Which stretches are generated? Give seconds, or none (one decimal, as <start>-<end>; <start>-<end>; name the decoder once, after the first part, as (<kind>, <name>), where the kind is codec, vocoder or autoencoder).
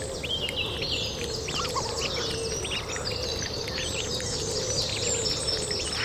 3.3-4.5 (vocoder, BigVGAN v2)